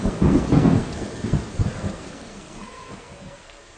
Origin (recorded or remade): remade